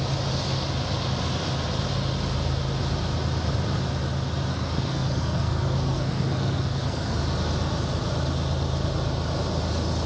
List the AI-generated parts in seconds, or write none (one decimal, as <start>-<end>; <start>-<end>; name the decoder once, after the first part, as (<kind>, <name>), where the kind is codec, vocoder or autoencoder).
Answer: 4.5-7.2 (codec, SNAC)